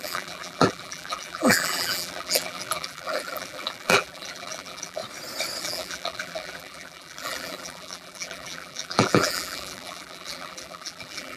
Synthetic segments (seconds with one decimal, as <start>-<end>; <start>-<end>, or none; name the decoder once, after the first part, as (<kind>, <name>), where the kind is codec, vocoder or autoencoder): 0.0-5.0 (vocoder, BigVGAN v2); 5.6-11.4